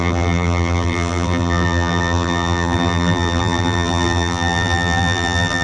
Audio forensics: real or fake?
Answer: fake